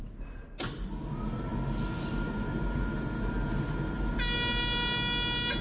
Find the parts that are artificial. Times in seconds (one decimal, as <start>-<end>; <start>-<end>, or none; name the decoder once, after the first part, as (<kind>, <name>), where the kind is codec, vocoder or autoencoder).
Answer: none